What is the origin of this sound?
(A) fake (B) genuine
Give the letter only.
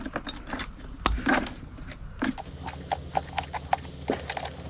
B